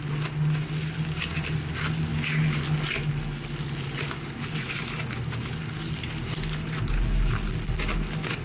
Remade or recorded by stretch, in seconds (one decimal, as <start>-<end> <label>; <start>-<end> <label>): 0.0-8.4 recorded